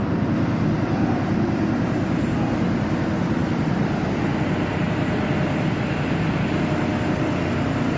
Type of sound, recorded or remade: recorded